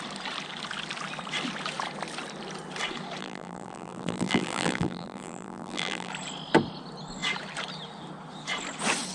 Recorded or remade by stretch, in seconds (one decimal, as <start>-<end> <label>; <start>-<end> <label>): 0.0-3.2 recorded; 3.2-6.1 remade; 6.1-9.1 recorded